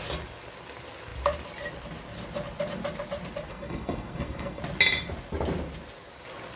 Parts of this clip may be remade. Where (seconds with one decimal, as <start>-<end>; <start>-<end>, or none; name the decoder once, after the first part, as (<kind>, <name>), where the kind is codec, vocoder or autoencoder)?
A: 3.5-4.6 (codec, SNAC)